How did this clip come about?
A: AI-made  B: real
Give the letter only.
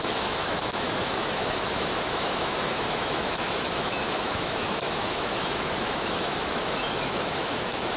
A